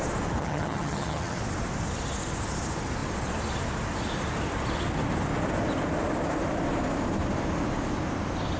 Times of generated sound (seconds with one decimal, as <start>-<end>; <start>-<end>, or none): 0.4-1.4

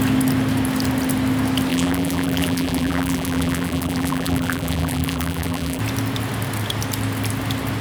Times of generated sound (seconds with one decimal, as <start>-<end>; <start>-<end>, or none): 1.7-5.8

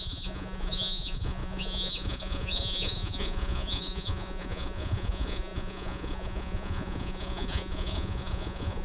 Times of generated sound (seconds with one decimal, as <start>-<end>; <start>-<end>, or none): 0.0-8.8

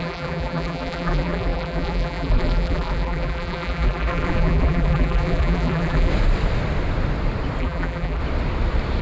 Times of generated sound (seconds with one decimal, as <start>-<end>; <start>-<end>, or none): 0.0-6.1; 7.6-8.2

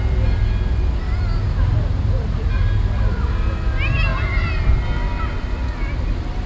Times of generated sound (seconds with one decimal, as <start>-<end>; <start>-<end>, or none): none

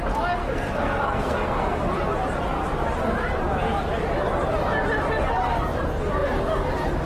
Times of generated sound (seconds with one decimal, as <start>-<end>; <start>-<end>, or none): 0.4-1.8